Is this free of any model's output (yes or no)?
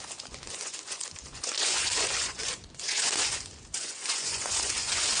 no